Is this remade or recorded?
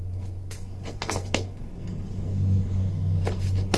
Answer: remade